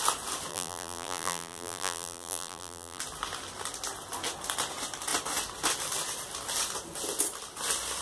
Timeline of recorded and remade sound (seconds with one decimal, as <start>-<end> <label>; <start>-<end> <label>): 0.0-0.5 recorded; 0.5-3.0 remade; 3.0-8.0 recorded